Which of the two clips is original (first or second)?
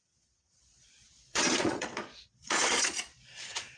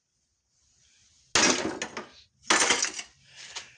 second